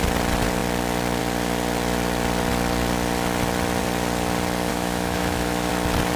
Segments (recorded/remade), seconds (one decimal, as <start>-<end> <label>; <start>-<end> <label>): 0.0-4.7 recorded; 4.7-5.7 remade; 5.7-6.2 recorded